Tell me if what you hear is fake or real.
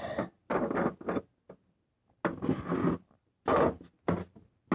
real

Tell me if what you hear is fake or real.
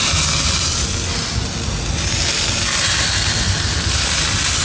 real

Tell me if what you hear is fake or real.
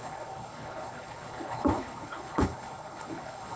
fake